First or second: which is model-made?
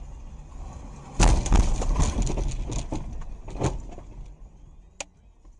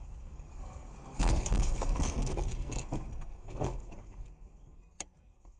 second